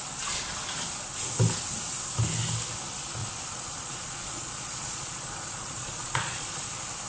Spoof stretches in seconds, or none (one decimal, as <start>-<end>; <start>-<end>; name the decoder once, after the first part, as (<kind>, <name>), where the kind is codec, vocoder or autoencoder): 3.2-6.6 (vocoder, Vocos)